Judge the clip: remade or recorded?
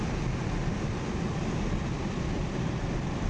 recorded